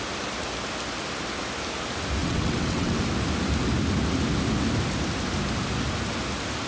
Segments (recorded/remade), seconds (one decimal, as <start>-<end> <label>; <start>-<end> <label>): 0.0-2.2 recorded; 2.2-3.0 remade; 3.0-6.7 recorded